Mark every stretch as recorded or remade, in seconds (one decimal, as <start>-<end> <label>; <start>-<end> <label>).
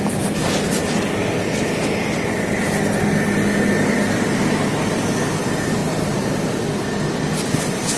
0.0-5.8 recorded; 5.8-6.6 remade; 6.6-8.0 recorded